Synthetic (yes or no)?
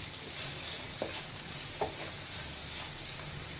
yes